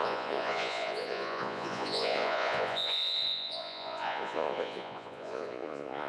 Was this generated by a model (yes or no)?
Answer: yes